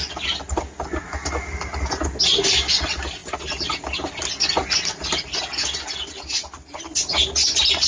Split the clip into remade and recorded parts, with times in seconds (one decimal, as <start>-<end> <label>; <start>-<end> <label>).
0.0-7.9 recorded